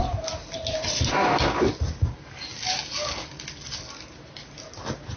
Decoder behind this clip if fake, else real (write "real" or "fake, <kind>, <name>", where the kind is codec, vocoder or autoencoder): real